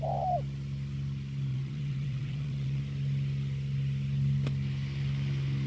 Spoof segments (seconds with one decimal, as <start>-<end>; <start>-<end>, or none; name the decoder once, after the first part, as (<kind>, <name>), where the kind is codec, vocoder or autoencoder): 1.5-2.8 (vocoder, WaveNeXt)

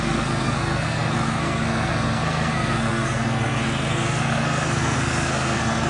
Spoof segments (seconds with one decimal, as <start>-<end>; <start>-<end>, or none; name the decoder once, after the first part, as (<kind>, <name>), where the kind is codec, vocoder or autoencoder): 0.0-5.9 (codec, SNAC)

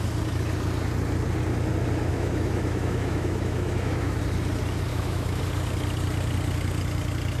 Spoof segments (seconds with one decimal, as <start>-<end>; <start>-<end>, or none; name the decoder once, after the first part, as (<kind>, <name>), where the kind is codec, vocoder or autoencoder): 2.1-4.2 (autoencoder, DAC-VAE); 4.9-5.4